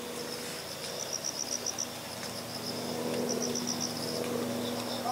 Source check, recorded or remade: recorded